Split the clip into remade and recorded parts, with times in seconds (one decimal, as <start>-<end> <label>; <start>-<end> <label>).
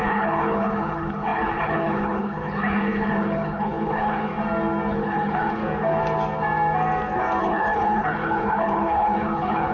0.0-4.3 remade; 4.3-4.9 recorded; 4.9-5.6 remade; 5.6-7.4 recorded; 7.4-9.7 remade